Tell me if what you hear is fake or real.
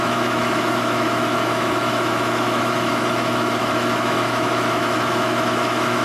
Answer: fake